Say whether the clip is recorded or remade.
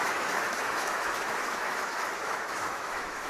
remade